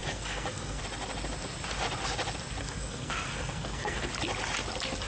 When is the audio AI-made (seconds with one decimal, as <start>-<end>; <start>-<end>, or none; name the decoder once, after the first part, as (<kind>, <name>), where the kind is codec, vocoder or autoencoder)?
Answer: 0.0-0.8 (codec, SNAC); 2.6-4.1